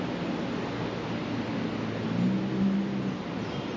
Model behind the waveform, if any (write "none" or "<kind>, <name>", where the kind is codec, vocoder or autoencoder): none